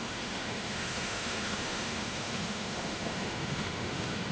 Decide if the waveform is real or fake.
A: fake